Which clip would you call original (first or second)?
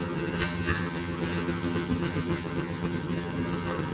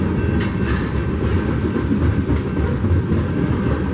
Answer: second